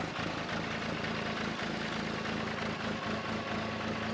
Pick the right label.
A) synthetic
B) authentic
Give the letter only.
B